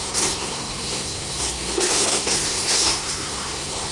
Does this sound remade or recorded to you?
remade